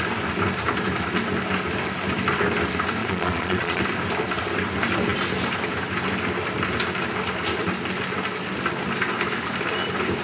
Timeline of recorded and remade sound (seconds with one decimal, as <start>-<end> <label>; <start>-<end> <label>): 0.0-3.0 recorded; 3.0-3.8 remade; 3.8-10.2 recorded